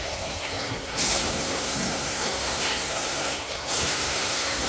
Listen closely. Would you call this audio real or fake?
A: fake